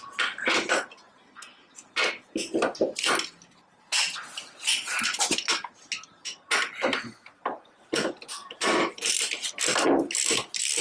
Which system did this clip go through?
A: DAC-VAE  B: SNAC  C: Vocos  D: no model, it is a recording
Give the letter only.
D